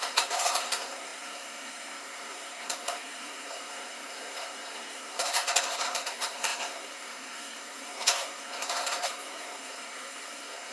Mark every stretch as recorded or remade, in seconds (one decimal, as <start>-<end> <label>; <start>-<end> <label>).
0.0-10.7 remade